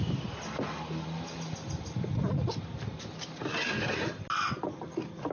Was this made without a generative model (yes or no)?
yes